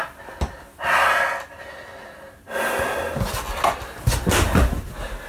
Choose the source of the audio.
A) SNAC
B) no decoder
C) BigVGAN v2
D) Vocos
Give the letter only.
B